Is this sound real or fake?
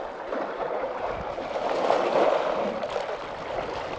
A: real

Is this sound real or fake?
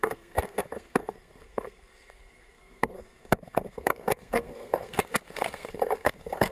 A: fake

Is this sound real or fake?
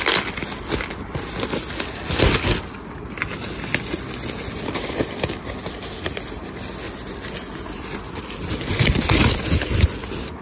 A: real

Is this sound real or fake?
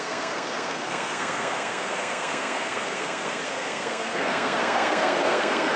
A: fake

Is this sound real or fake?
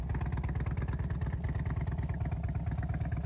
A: real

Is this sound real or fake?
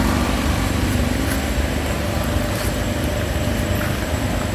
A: real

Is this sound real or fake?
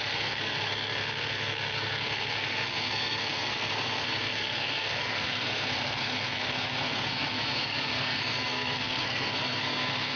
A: fake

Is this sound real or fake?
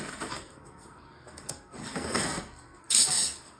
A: fake